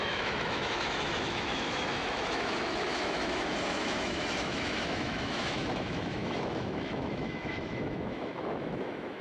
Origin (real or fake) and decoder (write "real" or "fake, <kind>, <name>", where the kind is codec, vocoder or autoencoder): fake, autoencoder, DAC-VAE